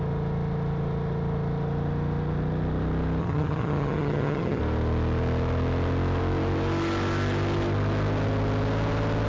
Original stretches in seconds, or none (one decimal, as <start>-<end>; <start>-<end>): 0.0-3.2; 4.6-9.3